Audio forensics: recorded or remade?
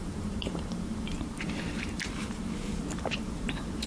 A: remade